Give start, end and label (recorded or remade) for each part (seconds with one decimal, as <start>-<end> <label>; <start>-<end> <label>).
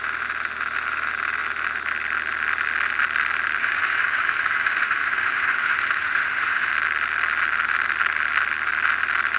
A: 0.0-3.6 recorded; 3.6-6.7 remade; 6.7-9.4 recorded